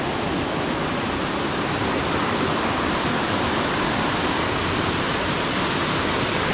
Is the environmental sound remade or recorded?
recorded